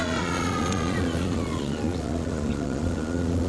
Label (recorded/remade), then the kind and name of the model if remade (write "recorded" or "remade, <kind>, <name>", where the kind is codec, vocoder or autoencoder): remade, vocoder, Vocos